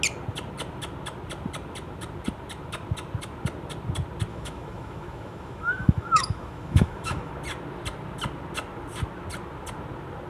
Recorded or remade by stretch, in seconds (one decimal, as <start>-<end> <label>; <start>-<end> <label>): 0.0-4.3 recorded; 4.3-7.3 remade; 7.3-10.3 recorded